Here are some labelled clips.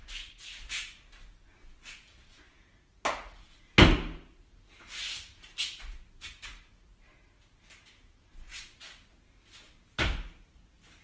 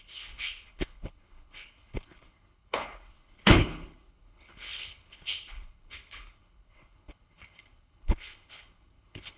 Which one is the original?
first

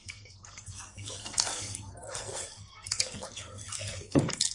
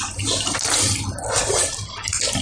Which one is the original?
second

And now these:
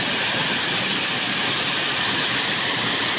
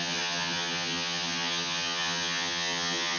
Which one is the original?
first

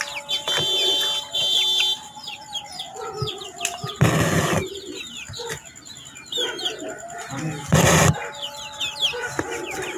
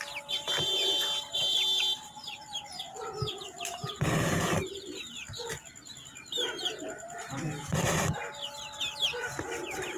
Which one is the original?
first